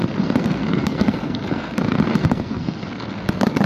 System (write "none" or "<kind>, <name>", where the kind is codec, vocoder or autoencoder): codec, SNAC